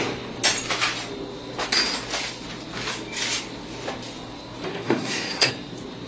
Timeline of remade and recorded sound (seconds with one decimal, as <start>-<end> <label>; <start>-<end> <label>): 0.0-4.7 recorded; 4.7-5.5 remade; 5.5-6.1 recorded